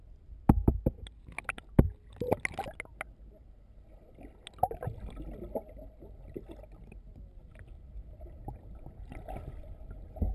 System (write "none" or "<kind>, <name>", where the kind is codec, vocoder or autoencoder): none